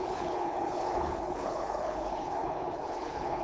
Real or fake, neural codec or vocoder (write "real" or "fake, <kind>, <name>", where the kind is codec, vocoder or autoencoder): fake, codec, HILCodec